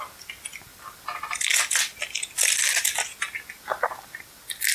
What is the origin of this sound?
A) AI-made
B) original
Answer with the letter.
B